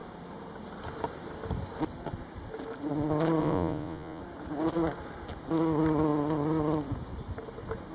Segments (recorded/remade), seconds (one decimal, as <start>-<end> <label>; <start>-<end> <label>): 0.0-3.4 recorded; 3.4-4.2 remade; 4.2-7.9 recorded